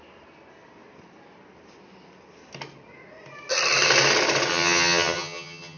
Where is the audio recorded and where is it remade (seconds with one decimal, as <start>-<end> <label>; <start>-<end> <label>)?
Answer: 0.0-4.5 recorded; 4.5-5.8 remade